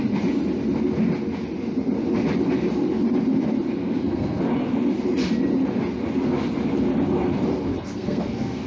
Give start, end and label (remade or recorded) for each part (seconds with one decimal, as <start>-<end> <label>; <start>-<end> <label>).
0.0-3.8 recorded; 3.8-4.4 remade; 4.4-7.7 recorded; 7.7-8.7 remade